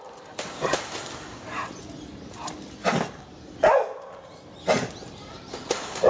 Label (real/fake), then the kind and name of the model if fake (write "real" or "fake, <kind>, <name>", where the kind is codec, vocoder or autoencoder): real